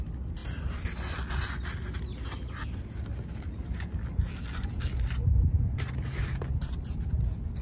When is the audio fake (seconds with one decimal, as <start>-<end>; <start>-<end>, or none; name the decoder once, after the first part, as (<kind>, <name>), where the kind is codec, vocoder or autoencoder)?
none